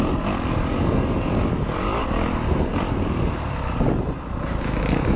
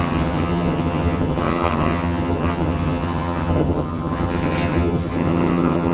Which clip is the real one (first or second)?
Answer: first